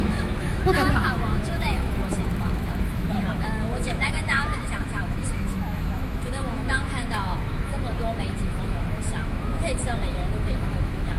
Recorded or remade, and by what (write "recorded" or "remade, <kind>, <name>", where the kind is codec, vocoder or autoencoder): remade, autoencoder, DAC-VAE